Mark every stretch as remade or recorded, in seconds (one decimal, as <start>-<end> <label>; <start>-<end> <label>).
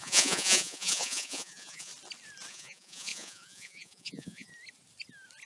0.0-1.9 remade; 1.9-2.5 recorded; 2.5-4.5 remade; 4.5-5.5 recorded